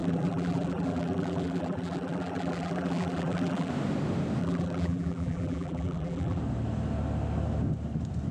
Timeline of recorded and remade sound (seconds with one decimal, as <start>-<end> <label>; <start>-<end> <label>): 0.0-3.7 remade; 3.7-4.4 recorded; 4.4-6.4 remade; 6.4-8.3 recorded